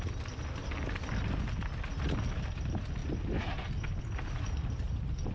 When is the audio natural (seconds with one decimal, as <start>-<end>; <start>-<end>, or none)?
0.0-5.3